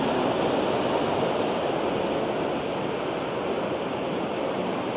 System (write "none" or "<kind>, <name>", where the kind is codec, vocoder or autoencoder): none